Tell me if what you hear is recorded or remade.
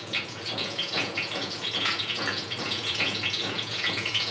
remade